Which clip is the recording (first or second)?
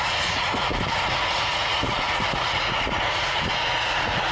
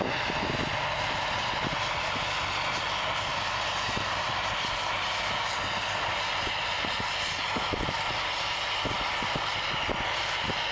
second